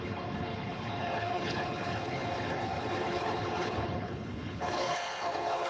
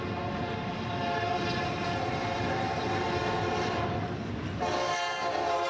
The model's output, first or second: first